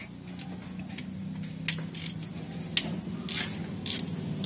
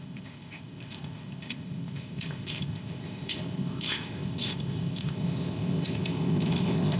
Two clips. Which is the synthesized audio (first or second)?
second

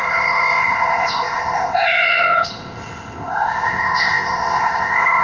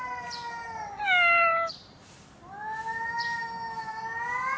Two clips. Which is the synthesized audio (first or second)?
first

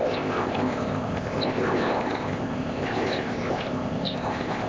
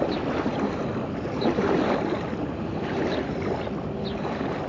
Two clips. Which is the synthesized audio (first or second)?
first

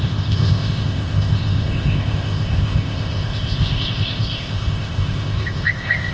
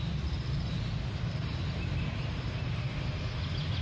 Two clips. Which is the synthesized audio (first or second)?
first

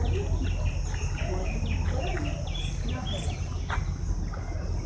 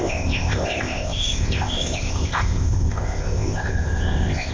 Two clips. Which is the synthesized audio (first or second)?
second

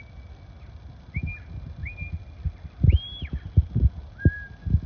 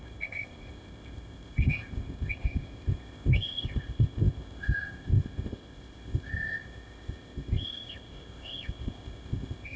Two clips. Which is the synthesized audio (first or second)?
second